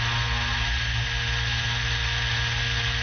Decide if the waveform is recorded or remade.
recorded